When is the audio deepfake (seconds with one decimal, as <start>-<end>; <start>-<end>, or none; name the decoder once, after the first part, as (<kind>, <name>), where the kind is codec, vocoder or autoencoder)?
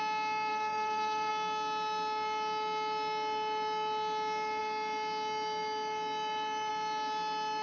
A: 0.5-1.3 (vocoder, WaveNeXt)